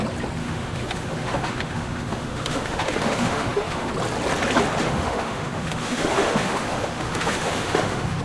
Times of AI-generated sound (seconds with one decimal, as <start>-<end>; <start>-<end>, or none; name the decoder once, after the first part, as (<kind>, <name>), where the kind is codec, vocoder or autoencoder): 0.4-3.9 (autoencoder, DAC-VAE); 4.8-8.2